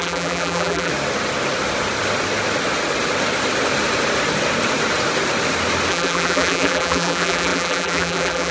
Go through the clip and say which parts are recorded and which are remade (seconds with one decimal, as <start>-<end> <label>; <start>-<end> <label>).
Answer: 0.0-0.9 remade; 0.9-5.9 recorded; 5.9-8.5 remade